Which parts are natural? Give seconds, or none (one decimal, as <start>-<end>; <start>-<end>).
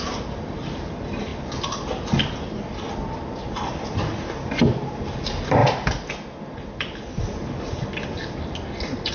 0.0-9.1